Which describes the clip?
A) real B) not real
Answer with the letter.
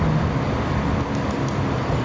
A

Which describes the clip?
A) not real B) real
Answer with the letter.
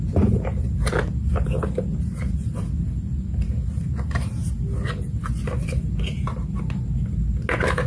B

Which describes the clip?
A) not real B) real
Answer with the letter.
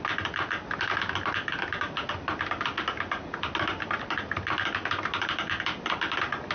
B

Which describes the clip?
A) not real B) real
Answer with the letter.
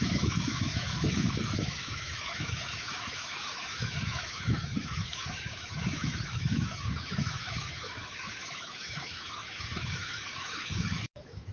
A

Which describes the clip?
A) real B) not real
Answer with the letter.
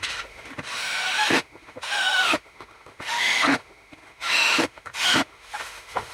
B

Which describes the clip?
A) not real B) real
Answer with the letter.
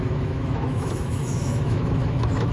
A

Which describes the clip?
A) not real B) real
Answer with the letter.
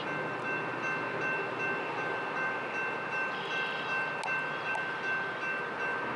B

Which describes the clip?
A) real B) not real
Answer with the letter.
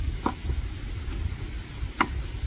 A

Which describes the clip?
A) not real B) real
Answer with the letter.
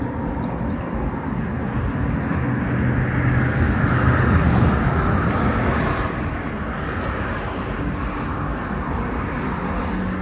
B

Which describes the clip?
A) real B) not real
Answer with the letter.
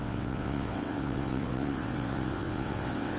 B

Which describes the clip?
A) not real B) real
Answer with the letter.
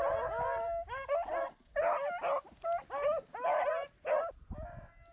B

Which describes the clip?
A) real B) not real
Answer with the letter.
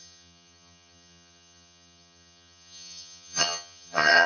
B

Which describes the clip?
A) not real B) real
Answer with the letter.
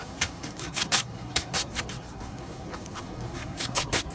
A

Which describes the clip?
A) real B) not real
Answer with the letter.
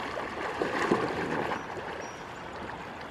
A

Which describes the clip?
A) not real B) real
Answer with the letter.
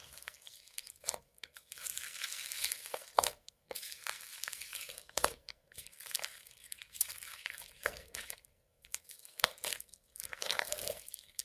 A